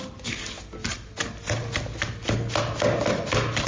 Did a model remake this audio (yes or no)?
no